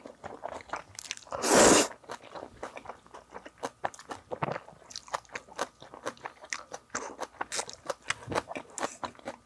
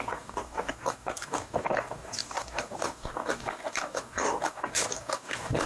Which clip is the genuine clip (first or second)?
first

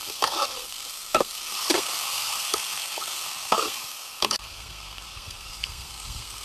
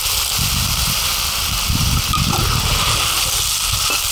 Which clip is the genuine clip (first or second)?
second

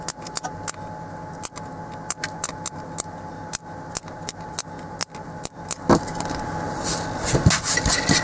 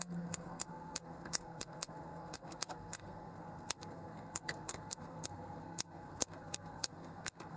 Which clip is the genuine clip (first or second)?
first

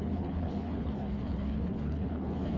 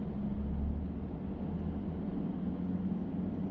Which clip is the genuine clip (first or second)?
second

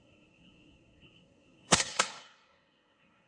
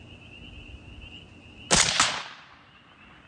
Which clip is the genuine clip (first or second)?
second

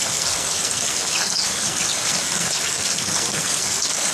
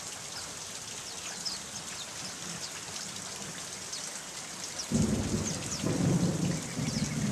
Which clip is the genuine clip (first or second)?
second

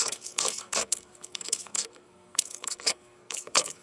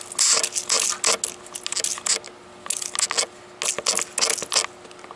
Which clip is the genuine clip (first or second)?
second